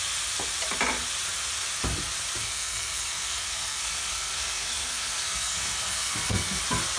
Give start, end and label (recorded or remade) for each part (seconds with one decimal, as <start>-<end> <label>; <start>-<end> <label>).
0.0-2.4 recorded; 2.4-6.6 remade; 6.6-7.0 recorded